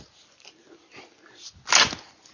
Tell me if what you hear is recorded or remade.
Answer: recorded